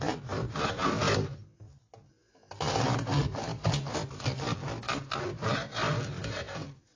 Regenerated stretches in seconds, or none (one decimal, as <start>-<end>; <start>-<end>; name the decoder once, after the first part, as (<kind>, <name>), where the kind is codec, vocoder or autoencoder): none